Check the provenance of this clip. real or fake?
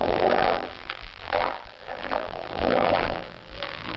fake